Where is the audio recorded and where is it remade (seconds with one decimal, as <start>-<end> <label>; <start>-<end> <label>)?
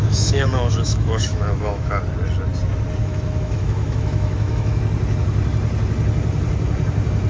0.0-2.0 remade; 2.0-3.0 recorded; 3.0-4.8 remade; 4.8-7.3 recorded